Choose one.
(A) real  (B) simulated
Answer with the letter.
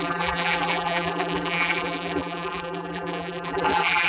B